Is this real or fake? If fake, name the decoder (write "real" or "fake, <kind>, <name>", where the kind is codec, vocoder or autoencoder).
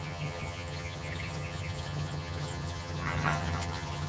fake, vocoder, HiFi-GAN